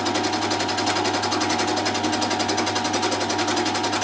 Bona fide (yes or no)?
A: yes